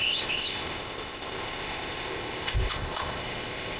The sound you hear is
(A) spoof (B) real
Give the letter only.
A